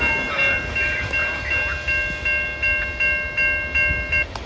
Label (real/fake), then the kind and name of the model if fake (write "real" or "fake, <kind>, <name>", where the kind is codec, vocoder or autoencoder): real